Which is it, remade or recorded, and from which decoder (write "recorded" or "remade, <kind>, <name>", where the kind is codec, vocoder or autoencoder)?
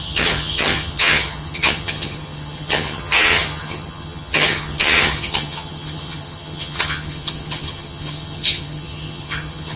remade, vocoder, HiFi-GAN